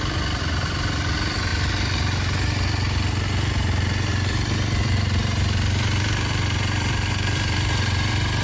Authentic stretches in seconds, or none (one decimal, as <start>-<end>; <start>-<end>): 1.5-4.1